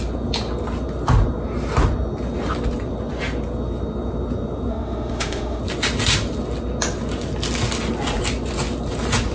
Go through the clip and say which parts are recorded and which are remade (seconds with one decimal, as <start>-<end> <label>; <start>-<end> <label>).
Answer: 0.0-4.7 recorded; 4.7-5.6 remade; 5.6-9.3 recorded